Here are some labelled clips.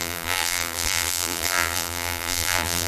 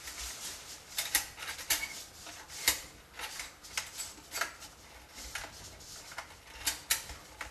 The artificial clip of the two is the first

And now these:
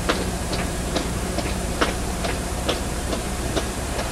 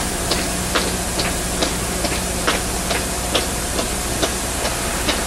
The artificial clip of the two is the first